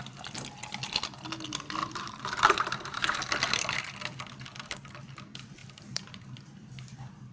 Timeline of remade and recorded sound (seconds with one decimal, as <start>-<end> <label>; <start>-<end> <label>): 0.0-1.8 recorded; 1.8-3.2 remade; 3.2-5.6 recorded; 5.6-6.7 remade; 6.7-7.3 recorded